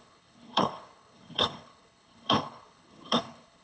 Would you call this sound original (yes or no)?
no